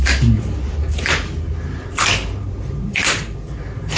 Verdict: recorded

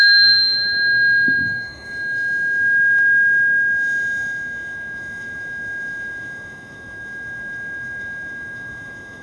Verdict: remade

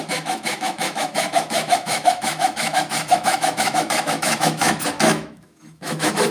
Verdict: remade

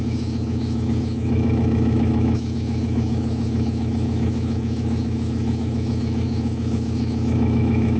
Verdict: remade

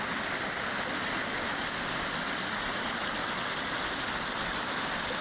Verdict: recorded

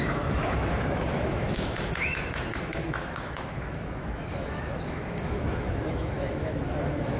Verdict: remade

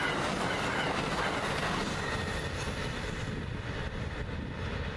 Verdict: recorded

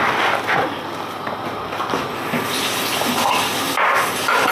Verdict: recorded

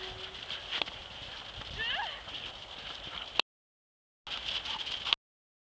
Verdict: recorded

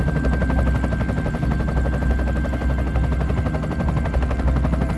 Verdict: recorded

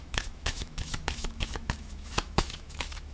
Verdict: remade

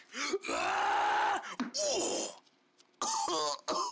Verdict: recorded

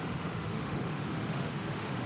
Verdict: remade